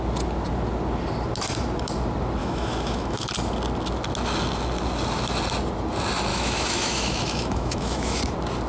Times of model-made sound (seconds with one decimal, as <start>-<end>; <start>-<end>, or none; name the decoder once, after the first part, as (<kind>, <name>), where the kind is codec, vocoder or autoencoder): 2.4-3.3 (autoencoder, DAC-VAE); 6.3-8.2